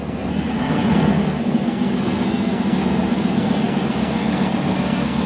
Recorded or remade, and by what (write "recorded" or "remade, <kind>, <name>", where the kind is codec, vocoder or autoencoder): remade, codec, SNAC